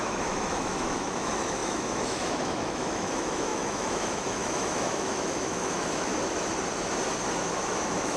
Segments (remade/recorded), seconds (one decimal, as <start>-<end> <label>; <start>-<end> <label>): 0.0-6.1 remade; 6.1-7.4 recorded; 7.4-8.2 remade